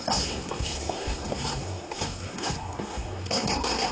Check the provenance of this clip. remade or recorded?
remade